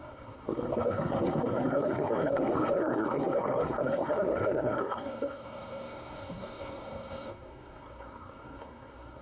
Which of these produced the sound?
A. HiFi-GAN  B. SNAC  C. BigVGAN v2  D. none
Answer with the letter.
B